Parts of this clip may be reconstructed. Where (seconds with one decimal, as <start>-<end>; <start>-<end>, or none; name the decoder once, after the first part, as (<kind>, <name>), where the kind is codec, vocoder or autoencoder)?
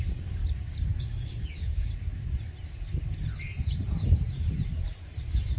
0.0-0.4 (codec, DAC); 1.0-1.9